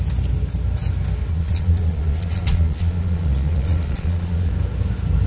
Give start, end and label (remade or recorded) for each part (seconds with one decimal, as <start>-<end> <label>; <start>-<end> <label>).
0.0-1.3 recorded; 1.3-4.5 remade; 4.5-5.3 recorded